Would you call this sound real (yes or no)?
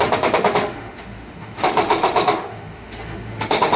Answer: no